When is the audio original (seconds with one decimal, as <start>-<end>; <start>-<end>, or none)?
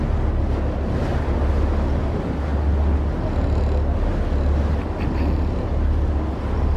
0.0-6.8